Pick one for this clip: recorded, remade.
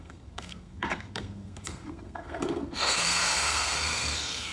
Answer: remade